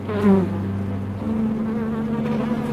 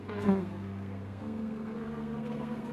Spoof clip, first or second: second